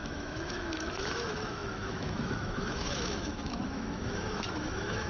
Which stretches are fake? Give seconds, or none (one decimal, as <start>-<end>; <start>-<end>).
0.0-5.1